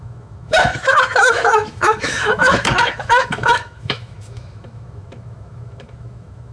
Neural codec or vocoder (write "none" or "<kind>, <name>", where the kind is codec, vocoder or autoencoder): autoencoder, DAC-VAE